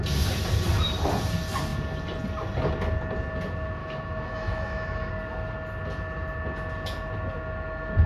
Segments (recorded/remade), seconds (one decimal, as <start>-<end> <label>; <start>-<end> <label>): 0.0-3.8 recorded; 3.8-5.1 remade; 5.1-8.1 recorded